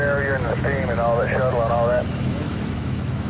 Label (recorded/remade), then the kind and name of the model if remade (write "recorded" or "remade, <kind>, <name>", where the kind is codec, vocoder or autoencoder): remade, autoencoder, DAC-VAE